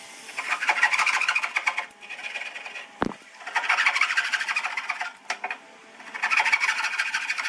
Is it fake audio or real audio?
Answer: real